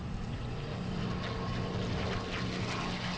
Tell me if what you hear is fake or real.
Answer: real